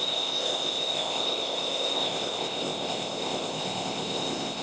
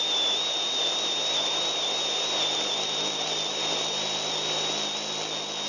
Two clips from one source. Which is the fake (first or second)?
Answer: first